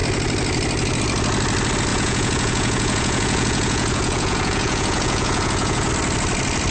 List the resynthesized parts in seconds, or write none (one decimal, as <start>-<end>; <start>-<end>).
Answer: 1.9-5.9